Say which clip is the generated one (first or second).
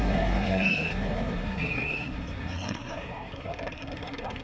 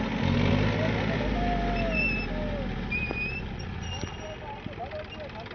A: first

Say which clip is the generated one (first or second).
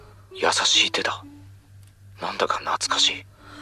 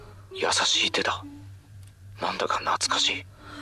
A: second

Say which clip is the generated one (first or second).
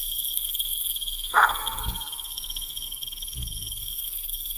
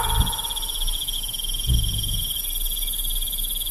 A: first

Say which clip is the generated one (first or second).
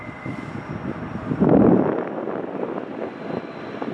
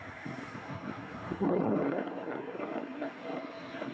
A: second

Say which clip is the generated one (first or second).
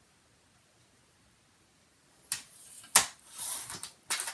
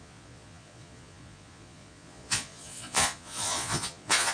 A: second